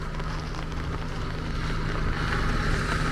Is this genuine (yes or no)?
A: yes